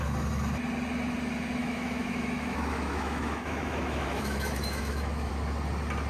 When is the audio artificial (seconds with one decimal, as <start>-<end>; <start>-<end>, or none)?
1.6-5.3